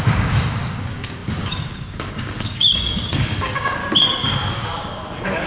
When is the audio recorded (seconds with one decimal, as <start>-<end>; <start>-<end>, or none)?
3.8-4.5